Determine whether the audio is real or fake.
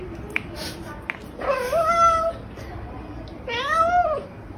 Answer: real